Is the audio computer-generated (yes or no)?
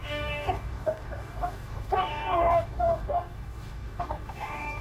yes